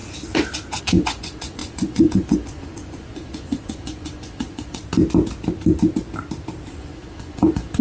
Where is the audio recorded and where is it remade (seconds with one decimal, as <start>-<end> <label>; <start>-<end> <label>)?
0.0-0.8 recorded; 0.8-4.8 remade; 4.8-6.7 recorded; 6.7-7.8 remade